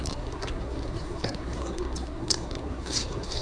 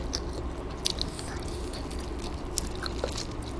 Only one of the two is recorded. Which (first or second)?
second